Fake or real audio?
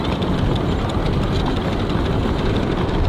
real